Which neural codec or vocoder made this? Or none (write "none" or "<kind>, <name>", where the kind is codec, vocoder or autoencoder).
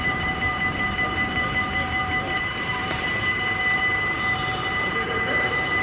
vocoder, BigVGAN v2